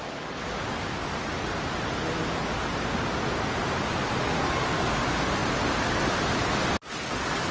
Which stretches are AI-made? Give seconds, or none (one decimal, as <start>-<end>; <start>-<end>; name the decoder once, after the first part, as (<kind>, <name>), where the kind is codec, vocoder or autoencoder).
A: none